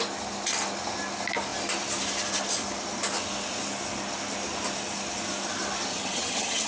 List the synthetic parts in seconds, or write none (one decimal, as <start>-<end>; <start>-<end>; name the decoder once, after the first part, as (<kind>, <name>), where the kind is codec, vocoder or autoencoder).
5.9-6.7 (vocoder, HiFi-GAN)